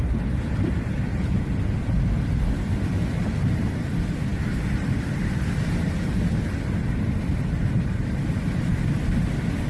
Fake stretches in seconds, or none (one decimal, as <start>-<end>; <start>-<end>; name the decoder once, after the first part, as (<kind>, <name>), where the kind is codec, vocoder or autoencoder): 0.0-1.1 (vocoder, BigVGAN v2); 1.7-9.7